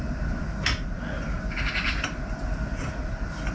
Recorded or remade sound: recorded